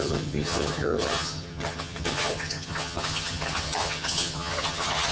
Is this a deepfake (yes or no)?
yes